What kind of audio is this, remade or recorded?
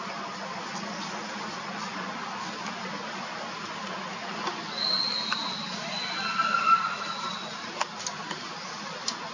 recorded